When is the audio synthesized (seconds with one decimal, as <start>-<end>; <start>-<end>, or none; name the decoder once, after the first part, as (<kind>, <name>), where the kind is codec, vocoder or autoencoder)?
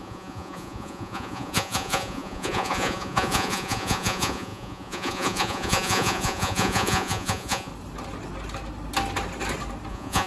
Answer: 0.0-7.7 (vocoder, Vocos); 9.9-10.3